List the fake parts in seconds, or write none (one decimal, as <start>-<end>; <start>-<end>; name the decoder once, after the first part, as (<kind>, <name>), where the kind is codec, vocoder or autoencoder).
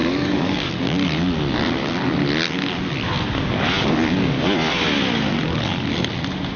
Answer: 0.0-0.7 (codec, DAC)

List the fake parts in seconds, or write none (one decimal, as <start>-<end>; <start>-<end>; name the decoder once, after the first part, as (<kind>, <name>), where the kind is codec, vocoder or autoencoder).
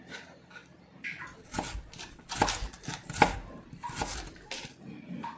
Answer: none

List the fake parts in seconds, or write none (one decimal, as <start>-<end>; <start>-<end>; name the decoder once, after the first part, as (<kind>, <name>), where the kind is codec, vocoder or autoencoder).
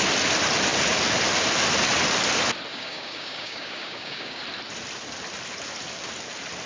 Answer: 2.7-4.4 (codec, DAC)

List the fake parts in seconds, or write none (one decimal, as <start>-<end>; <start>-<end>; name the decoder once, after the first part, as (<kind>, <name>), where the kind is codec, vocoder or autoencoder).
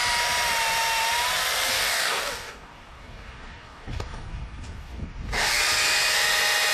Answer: 1.7-5.6 (codec, DAC)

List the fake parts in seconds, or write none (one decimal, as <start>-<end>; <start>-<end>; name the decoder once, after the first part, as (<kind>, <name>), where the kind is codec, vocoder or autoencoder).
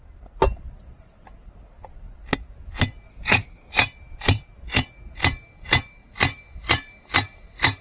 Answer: 3.1-3.7 (codec, DAC)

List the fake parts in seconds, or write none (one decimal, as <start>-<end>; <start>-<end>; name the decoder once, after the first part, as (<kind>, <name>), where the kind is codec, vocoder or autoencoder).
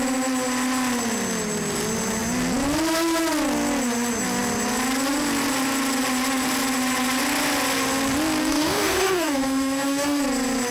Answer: 8.4-10.2 (codec, DAC)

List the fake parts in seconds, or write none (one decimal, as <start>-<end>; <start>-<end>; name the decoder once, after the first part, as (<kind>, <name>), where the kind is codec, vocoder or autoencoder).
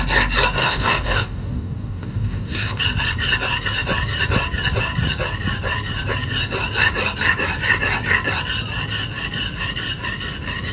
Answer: 0.6-2.8 (codec, DAC)